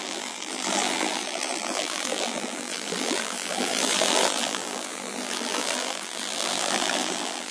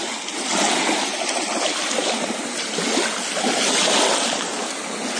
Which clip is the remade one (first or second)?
first